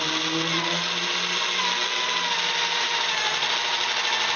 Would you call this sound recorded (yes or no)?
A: yes